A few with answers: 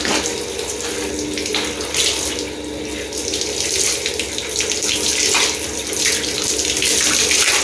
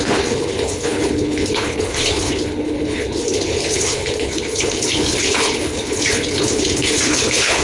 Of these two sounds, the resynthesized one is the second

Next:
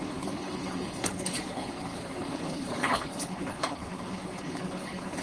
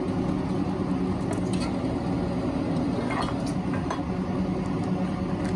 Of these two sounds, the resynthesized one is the first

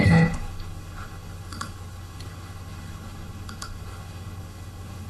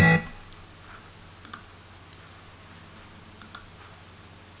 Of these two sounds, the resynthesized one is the first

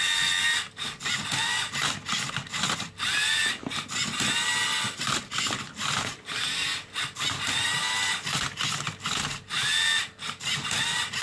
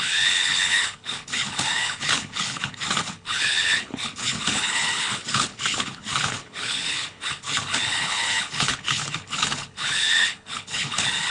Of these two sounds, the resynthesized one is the second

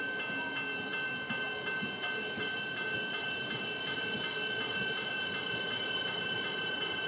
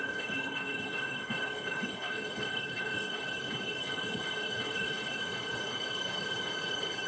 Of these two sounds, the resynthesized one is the second